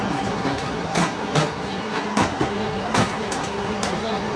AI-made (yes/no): yes